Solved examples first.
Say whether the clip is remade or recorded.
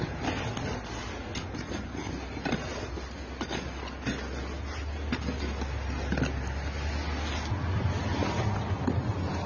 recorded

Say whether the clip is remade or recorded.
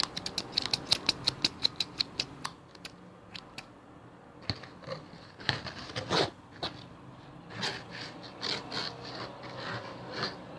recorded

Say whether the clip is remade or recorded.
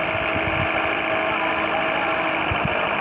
recorded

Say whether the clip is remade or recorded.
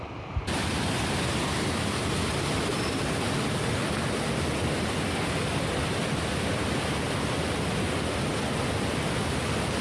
recorded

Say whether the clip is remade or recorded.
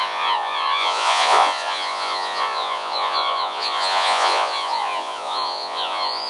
remade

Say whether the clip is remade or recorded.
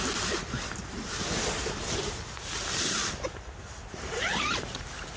recorded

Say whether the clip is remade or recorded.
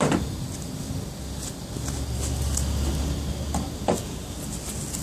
recorded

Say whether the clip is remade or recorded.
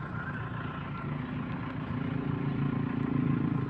recorded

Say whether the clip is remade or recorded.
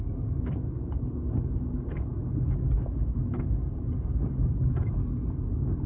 remade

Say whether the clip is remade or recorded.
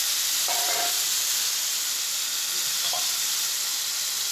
recorded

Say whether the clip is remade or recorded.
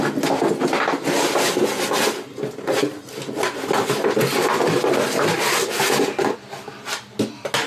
recorded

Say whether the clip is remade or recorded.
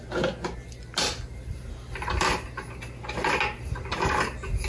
recorded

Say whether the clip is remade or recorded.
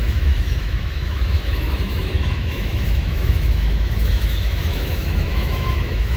remade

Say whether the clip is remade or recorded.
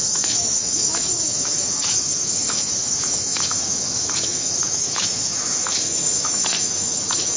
remade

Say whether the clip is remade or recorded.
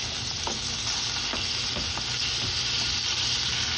recorded